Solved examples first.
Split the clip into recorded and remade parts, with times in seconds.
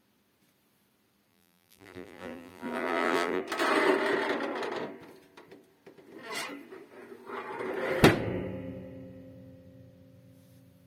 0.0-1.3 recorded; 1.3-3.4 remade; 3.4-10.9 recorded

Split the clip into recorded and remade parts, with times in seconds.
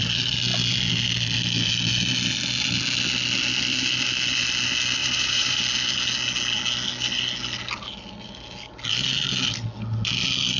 0.0-5.0 recorded; 5.0-5.6 remade; 5.6-10.6 recorded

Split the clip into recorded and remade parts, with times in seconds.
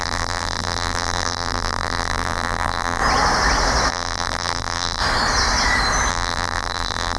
0.0-3.0 remade; 3.0-3.9 recorded; 3.9-5.0 remade; 5.0-6.1 recorded; 6.1-7.2 remade